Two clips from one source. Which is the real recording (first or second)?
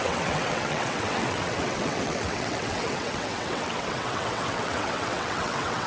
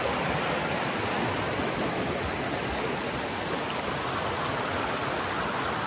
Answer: second